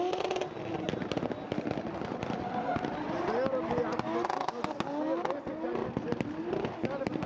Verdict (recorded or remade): recorded